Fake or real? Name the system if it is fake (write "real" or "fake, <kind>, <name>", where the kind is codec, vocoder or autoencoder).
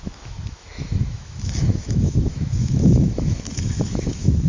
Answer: fake, autoencoder, DAC-VAE